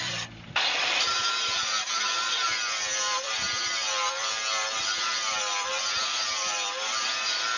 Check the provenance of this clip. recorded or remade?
remade